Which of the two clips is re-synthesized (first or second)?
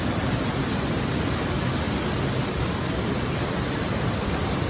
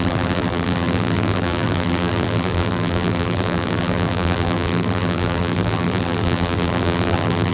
second